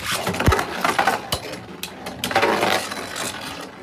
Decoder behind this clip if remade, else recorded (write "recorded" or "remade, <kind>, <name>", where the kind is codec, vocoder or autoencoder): recorded